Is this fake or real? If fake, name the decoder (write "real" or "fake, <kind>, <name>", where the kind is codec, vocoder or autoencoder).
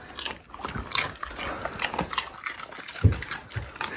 real